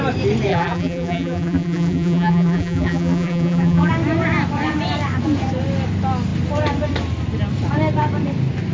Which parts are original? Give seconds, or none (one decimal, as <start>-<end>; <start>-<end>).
0.0-0.5; 3.9-8.7